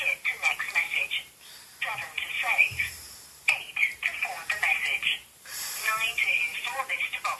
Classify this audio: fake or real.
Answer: fake